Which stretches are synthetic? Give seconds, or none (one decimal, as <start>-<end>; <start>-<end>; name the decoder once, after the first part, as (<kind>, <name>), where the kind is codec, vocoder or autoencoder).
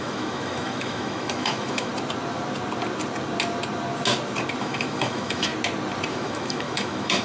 0.0-1.9 (autoencoder, DAC-VAE); 4.6-5.5; 6.1-7.2